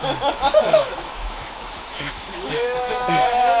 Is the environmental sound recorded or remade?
remade